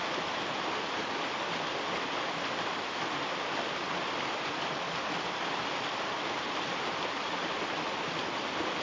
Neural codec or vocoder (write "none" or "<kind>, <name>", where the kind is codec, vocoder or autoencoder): none